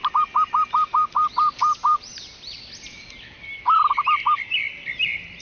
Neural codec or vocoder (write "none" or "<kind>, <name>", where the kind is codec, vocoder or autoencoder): none